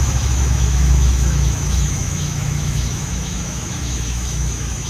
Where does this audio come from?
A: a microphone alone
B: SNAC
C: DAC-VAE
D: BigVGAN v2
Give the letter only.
C